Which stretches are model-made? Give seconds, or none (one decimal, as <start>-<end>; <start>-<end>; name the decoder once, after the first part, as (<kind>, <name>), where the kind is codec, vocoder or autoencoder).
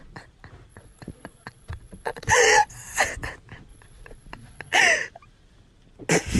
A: 0.7-2.7 (vocoder, Vocos); 3.7-4.8